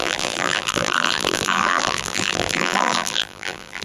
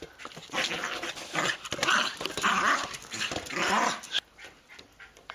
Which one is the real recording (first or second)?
second